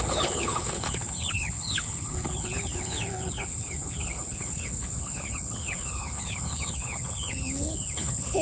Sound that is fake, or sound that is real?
fake